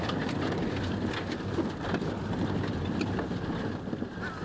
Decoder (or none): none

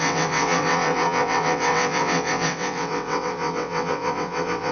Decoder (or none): vocoder, WaveNeXt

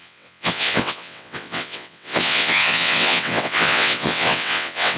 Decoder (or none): vocoder, WaveNeXt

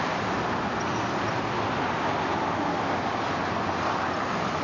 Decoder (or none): none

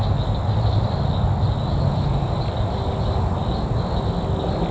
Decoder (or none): none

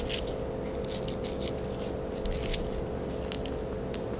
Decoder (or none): none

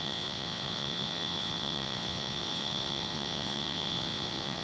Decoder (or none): vocoder, WaveNeXt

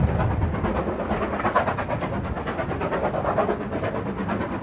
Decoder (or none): none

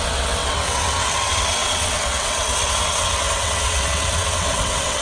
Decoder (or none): vocoder, WaveNeXt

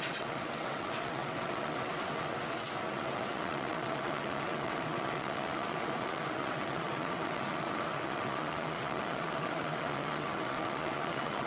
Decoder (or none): vocoder, WaveNeXt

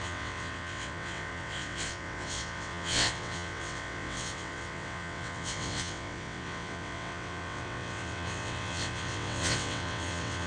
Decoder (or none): vocoder, WaveNeXt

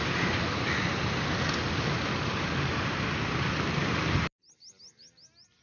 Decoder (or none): none